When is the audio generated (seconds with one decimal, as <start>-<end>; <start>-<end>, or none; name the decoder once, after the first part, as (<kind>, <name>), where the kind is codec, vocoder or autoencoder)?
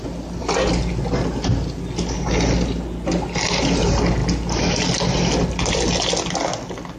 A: 4.2-5.8 (vocoder, BigVGAN v2)